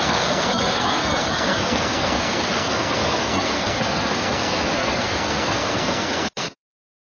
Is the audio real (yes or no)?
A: no